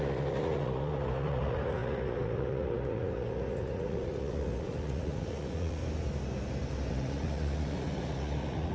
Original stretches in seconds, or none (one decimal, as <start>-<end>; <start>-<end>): 5.8-6.9

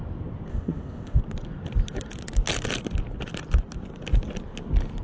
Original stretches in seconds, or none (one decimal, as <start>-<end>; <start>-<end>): 0.0-0.5; 1.2-5.0